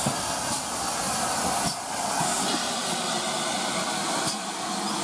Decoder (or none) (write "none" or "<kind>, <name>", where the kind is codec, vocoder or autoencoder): none